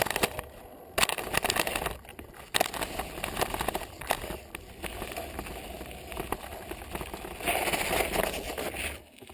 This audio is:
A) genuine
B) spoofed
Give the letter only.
A